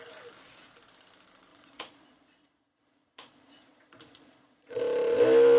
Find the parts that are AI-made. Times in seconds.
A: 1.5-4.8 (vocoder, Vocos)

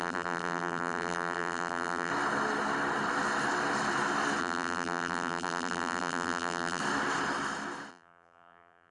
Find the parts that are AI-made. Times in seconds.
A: 0.0-2.1 (vocoder, BigVGAN v2); 4.4-6.8; 7.9-8.9

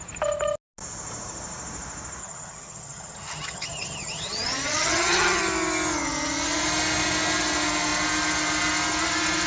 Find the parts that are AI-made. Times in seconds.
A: 2.2-5.4 (vocoder, HiFi-GAN)

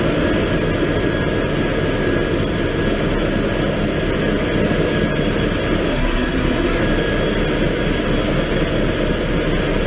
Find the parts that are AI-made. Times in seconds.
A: 5.9-6.8 (codec, SNAC)

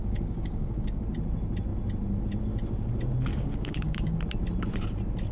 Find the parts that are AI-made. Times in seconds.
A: 0.0-1.0 (codec, DAC); 3.3-4.2

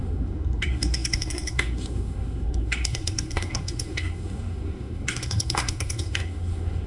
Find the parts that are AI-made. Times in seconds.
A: 0.0-6.9 (codec, SNAC)